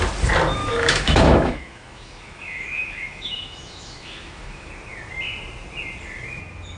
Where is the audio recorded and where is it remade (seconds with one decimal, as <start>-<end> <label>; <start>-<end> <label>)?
0.0-0.6 recorded; 0.6-4.7 remade; 4.7-6.8 recorded